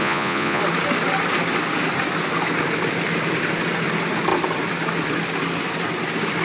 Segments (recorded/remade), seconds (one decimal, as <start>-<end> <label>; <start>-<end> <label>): 0.0-0.6 remade; 0.6-6.4 recorded